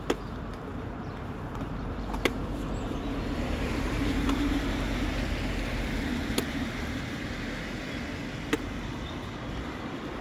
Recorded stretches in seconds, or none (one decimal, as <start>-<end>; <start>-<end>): 0.0-0.7; 4.6-10.2